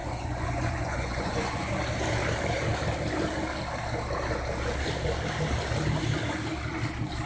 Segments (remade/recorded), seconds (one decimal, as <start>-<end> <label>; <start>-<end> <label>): 0.0-1.7 remade; 1.7-7.3 recorded